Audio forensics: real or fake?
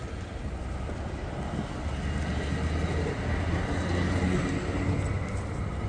real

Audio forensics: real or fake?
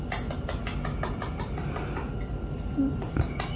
real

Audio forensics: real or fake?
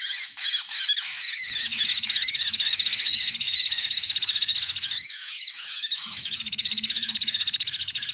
fake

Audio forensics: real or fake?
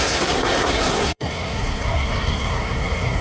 fake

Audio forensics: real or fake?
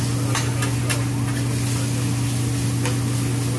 real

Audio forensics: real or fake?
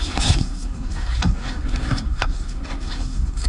fake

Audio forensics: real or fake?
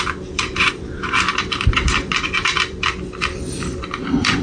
fake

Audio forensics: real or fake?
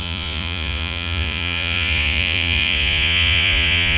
fake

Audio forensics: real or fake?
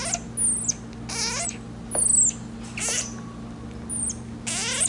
real